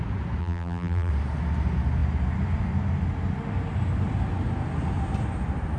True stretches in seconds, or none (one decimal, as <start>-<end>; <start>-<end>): 0.0-0.4; 1.1-5.8